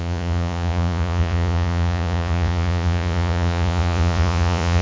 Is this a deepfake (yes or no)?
yes